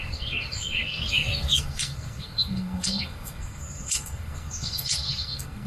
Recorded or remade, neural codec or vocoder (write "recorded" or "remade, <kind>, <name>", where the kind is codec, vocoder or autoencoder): remade, codec, SNAC